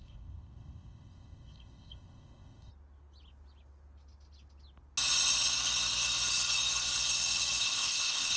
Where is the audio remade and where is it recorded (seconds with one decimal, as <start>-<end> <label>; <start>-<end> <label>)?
0.0-2.7 remade; 2.7-7.6 recorded; 7.6-8.4 remade